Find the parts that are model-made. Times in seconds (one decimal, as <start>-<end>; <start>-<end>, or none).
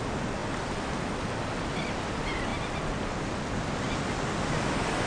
none